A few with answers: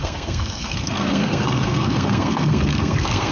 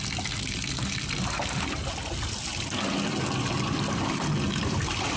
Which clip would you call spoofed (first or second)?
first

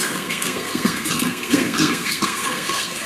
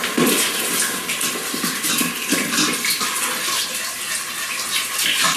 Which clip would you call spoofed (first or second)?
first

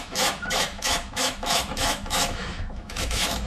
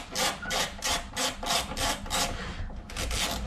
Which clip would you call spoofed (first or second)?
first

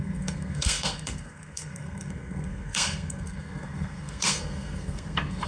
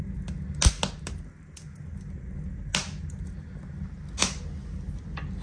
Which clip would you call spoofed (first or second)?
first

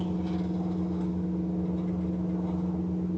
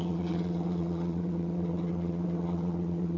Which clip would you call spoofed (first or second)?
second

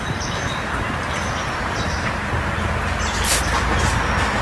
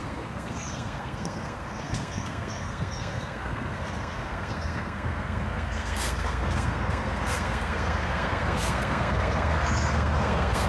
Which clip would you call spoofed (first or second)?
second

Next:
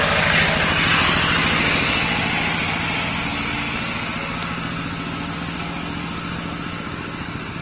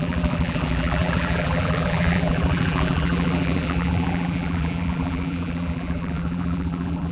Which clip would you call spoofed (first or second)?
second